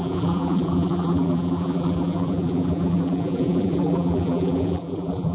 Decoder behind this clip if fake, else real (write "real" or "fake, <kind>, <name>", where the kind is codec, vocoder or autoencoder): fake, vocoder, BigVGAN v2